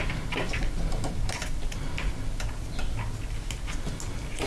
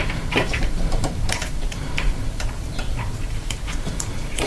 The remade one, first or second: second